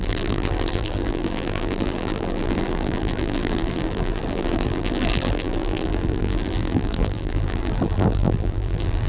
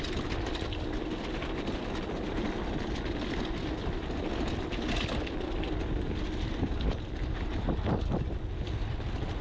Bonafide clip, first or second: second